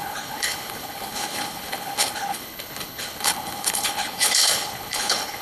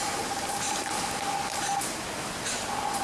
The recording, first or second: second